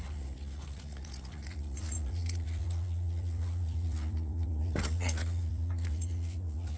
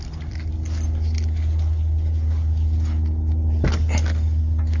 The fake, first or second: first